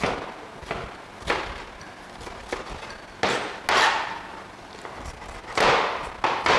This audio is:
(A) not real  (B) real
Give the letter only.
B